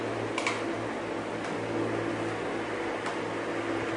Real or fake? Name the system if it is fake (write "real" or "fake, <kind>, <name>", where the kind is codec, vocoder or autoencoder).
real